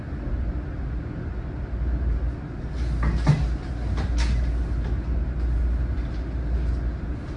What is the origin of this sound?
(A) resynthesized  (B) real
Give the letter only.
B